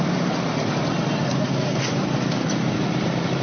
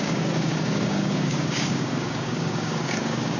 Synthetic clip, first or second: second